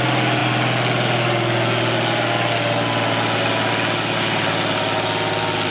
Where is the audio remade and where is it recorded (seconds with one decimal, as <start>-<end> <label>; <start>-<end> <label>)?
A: 0.0-5.7 recorded